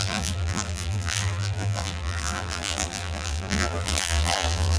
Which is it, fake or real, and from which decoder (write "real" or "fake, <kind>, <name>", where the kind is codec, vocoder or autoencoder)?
fake, vocoder, BigVGAN v2